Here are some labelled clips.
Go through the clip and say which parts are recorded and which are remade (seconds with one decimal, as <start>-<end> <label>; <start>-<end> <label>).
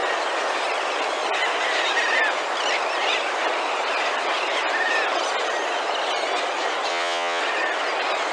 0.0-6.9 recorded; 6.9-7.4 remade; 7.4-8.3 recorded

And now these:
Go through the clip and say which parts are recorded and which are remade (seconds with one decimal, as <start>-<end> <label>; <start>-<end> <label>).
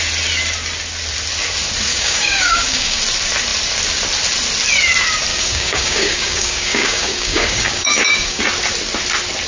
0.0-1.9 recorded; 1.9-3.0 remade; 3.0-5.3 recorded; 5.3-8.4 remade; 8.4-9.5 recorded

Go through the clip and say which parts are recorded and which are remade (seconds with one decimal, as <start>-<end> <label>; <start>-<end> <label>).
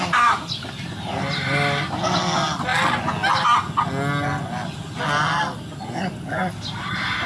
0.0-7.3 recorded